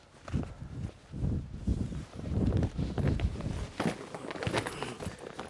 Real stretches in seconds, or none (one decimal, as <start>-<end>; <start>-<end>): 0.0-5.5